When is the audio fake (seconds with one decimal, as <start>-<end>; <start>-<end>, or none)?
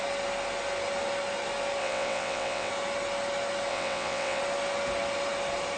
1.8-2.7; 3.7-4.4